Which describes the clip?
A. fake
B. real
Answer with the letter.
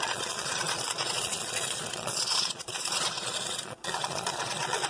A